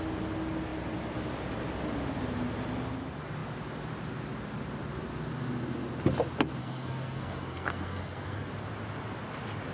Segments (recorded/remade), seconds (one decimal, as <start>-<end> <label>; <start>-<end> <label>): 0.0-6.6 recorded; 6.6-8.5 remade; 8.5-9.7 recorded